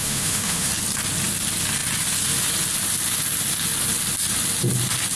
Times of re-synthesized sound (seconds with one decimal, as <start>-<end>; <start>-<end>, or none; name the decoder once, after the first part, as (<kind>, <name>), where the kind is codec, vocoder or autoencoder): 0.0-0.7 (autoencoder, DAC-VAE)